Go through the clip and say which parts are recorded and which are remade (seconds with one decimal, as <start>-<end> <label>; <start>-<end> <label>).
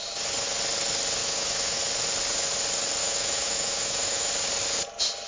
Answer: 0.0-1.2 recorded; 1.2-1.8 remade; 1.8-3.0 recorded; 3.0-4.3 remade; 4.3-5.3 recorded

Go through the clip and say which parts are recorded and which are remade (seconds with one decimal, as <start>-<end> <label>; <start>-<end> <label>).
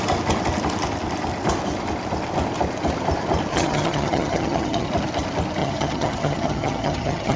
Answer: 0.0-3.5 recorded; 3.5-4.9 remade; 4.9-5.6 recorded; 5.6-7.4 remade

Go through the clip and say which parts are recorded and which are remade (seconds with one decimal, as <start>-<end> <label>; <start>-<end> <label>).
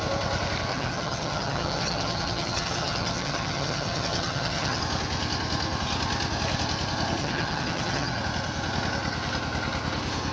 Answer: 0.0-0.7 recorded; 0.7-4.8 remade; 4.8-7.2 recorded; 7.2-8.2 remade; 8.2-10.3 recorded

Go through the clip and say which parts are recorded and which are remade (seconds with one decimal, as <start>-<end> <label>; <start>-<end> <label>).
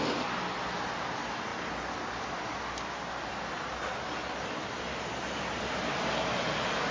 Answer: 0.0-6.9 recorded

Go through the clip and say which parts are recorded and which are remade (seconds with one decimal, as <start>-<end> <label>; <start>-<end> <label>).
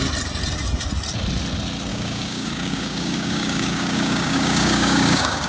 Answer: 0.0-1.9 recorded; 1.9-5.5 remade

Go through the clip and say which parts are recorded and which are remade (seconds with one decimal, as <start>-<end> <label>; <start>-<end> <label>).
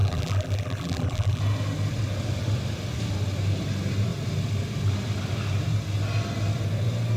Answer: 0.0-1.4 remade; 1.4-7.2 recorded